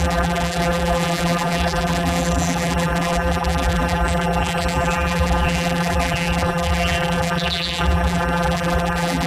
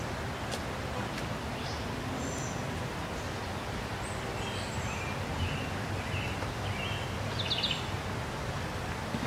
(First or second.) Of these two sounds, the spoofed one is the first